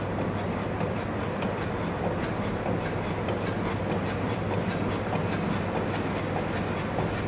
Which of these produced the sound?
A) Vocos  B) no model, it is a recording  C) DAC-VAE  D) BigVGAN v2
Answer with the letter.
B